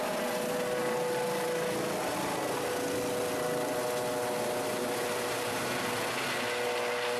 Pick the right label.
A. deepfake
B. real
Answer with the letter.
B